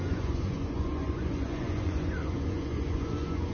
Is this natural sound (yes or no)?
no